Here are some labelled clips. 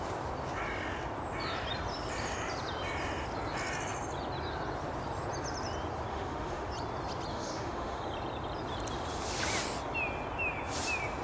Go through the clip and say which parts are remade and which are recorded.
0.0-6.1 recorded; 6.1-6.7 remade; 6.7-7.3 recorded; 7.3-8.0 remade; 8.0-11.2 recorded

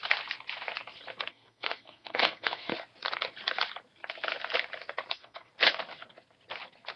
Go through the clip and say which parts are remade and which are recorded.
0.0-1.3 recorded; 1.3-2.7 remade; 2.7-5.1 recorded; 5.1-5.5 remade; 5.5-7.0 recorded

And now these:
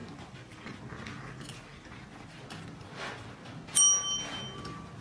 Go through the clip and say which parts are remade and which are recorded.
0.0-5.0 recorded

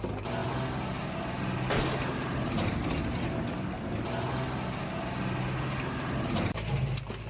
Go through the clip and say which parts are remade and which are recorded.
0.0-7.3 recorded

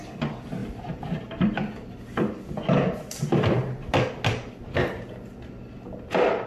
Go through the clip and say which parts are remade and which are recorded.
0.0-6.5 recorded

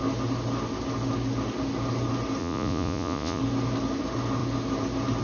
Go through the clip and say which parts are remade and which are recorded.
0.0-2.4 recorded; 2.4-3.4 remade; 3.4-5.2 recorded